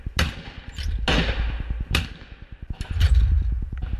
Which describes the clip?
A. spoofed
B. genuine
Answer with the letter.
B